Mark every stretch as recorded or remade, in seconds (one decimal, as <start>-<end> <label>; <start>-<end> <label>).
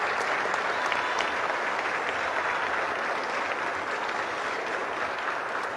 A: 0.0-5.8 recorded